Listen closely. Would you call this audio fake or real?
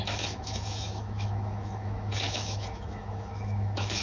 fake